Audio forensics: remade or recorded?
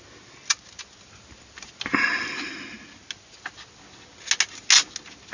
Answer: recorded